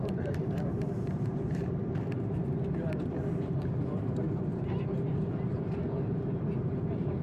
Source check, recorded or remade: remade